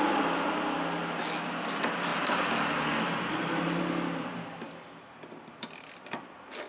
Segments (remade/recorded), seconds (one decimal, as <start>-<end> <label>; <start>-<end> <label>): 0.0-6.7 recorded